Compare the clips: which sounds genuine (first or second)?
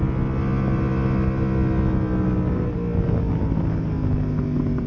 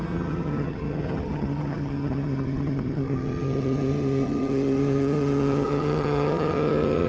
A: first